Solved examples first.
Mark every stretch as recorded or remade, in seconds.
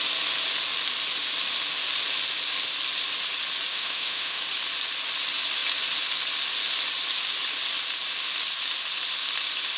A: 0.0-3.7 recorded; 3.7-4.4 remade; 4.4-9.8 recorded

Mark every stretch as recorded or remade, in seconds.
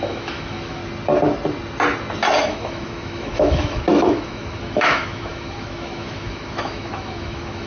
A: 0.0-0.8 remade; 0.8-2.4 recorded; 2.4-7.7 remade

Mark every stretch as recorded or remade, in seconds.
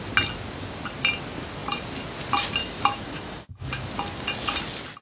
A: 0.0-2.6 recorded; 2.6-3.9 remade; 3.9-5.0 recorded